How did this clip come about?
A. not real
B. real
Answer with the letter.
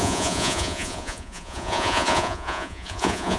A